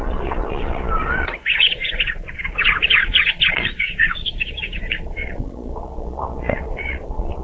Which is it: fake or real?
fake